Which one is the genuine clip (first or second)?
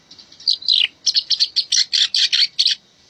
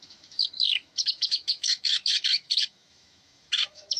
first